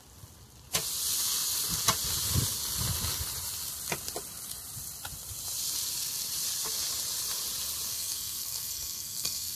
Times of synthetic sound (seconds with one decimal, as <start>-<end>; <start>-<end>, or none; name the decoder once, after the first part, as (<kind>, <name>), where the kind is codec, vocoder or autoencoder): 7.9-9.6 (codec, SNAC)